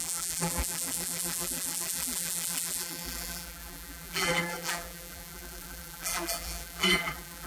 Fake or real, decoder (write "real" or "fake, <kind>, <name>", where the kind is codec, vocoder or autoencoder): fake, vocoder, BigVGAN v2